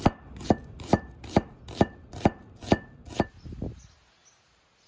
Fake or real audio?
real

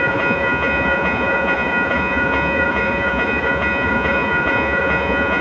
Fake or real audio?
fake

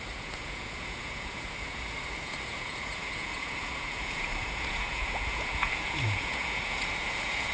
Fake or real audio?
fake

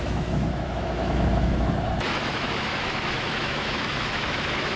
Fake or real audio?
fake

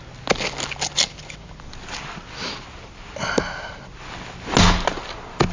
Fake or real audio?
real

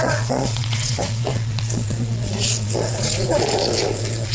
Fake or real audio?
fake